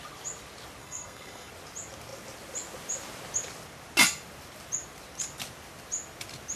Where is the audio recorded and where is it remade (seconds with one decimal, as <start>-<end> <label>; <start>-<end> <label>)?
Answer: 0.0-0.8 recorded; 0.8-1.5 remade; 1.5-6.6 recorded